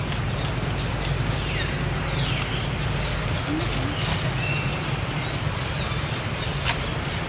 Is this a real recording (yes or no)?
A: yes